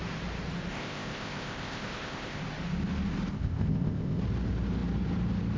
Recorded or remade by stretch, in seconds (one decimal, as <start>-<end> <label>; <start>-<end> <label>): 0.0-0.7 recorded; 0.7-2.4 remade; 2.4-3.3 recorded; 3.3-4.2 remade; 4.2-5.6 recorded